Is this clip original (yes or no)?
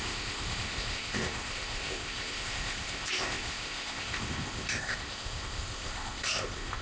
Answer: no